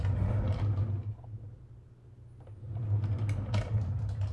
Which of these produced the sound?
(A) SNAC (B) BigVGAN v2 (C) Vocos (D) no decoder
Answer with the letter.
D